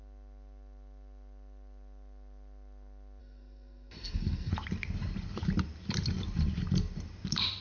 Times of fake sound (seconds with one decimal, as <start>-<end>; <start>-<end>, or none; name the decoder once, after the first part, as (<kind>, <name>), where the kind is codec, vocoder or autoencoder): 3.2-4.5 (codec, SNAC)